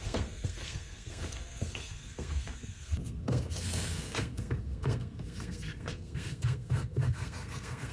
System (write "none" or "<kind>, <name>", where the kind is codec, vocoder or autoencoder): codec, SNAC